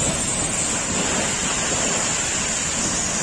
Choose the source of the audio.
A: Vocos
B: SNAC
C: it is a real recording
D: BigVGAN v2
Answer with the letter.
C